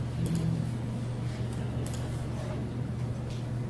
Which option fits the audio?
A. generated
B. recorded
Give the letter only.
B